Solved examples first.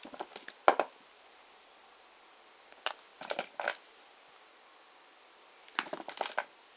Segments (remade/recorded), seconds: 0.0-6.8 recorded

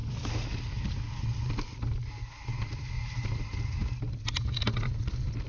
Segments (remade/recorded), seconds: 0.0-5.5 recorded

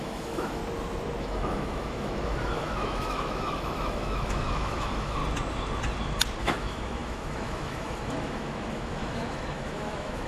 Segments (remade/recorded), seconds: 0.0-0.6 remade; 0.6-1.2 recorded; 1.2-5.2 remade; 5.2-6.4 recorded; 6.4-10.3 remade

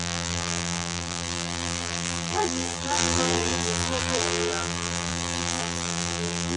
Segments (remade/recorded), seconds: 0.0-6.6 remade

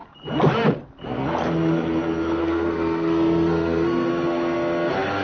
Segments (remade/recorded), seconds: 0.0-2.4 recorded; 2.4-4.1 remade; 4.1-5.2 recorded